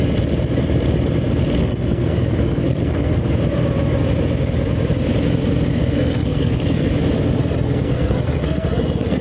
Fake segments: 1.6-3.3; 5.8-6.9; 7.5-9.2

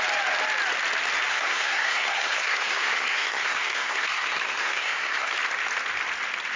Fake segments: 1.3-5.3

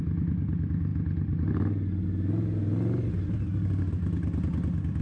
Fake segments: none

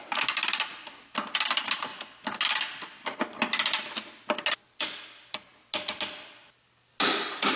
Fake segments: none

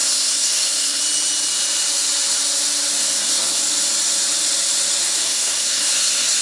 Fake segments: 0.0-1.0; 3.0-3.6; 5.0-6.4

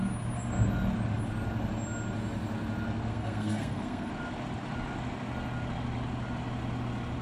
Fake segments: 3.1-4.1

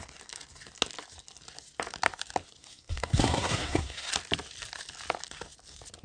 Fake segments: 2.6-4.1